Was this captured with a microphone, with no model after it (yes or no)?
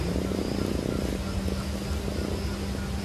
yes